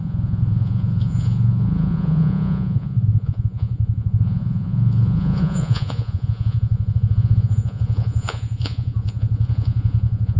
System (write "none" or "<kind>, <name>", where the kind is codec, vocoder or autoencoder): vocoder, Vocos